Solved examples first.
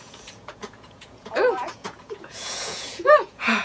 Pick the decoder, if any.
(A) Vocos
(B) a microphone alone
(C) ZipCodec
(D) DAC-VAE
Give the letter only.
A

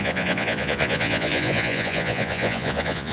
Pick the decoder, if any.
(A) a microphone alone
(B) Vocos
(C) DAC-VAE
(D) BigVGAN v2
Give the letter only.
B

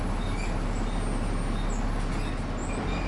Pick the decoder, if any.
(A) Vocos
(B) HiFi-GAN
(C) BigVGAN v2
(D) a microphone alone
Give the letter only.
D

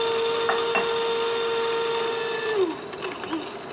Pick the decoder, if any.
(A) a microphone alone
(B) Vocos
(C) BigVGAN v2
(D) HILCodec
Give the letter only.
A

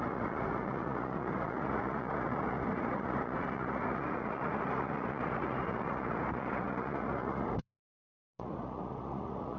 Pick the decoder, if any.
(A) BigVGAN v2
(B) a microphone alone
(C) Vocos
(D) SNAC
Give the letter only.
C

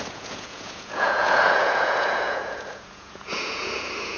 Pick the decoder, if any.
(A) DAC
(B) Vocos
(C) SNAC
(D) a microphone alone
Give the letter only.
B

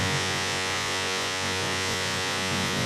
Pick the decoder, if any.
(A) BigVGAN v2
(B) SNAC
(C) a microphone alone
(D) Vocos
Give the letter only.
D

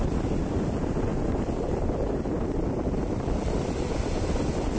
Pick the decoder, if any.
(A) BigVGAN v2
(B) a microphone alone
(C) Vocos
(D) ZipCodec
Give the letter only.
B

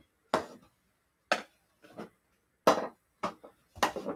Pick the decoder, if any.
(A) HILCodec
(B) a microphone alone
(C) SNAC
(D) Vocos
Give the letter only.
B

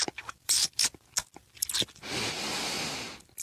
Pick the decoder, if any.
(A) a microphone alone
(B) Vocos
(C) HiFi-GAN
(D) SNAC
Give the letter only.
A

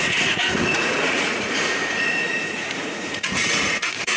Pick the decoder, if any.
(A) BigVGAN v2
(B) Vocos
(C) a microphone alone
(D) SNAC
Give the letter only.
B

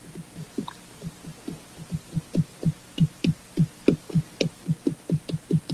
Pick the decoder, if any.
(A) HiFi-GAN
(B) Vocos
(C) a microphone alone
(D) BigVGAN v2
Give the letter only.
C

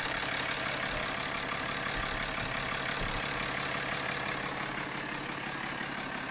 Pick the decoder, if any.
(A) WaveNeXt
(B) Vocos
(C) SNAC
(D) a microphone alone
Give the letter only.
D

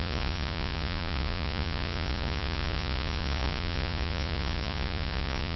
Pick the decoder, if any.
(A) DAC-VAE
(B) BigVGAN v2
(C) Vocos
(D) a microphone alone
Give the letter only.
C